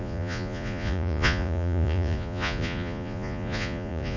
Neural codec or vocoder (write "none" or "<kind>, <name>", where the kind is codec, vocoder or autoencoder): vocoder, Vocos